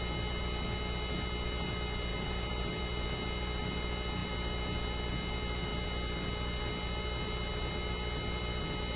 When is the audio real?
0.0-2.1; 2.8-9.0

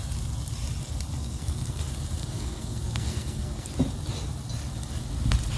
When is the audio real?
0.0-1.2; 1.8-2.2; 3.7-5.6

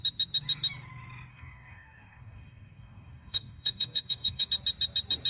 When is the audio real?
0.0-1.3; 4.5-5.3

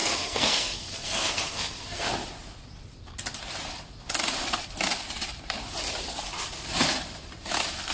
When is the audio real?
2.1-7.9

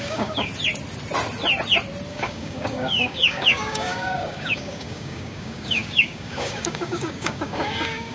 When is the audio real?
0.5-2.1